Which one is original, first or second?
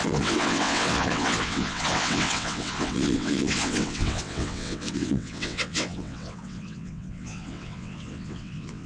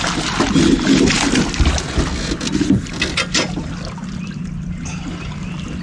second